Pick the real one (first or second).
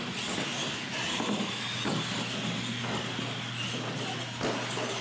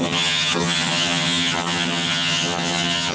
first